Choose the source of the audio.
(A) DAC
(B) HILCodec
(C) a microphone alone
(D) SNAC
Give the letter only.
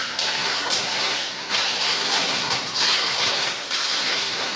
D